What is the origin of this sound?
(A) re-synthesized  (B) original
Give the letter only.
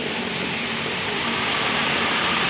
A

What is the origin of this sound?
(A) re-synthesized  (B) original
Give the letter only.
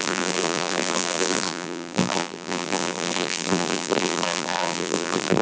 A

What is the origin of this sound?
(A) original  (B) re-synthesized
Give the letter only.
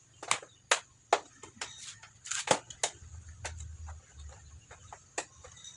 A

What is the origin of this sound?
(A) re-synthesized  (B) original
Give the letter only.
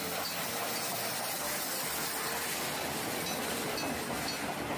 B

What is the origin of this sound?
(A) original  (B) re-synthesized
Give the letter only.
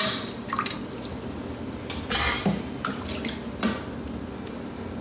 A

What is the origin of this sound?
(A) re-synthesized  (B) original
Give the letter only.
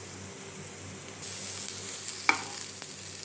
B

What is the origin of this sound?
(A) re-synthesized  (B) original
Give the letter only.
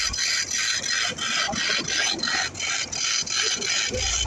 B